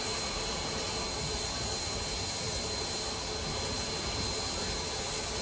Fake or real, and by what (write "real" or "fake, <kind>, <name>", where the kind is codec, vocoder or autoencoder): real